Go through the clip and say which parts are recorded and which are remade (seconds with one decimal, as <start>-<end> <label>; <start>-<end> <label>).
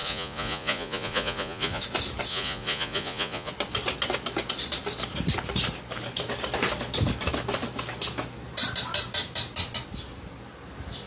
0.0-1.8 remade; 1.8-2.3 recorded; 2.3-3.5 remade; 3.5-11.1 recorded